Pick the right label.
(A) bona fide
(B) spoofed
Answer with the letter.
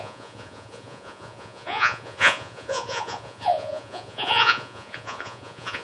B